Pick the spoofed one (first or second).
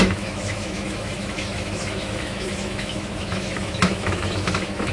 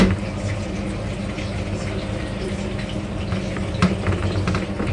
first